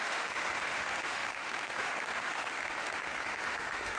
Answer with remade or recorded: remade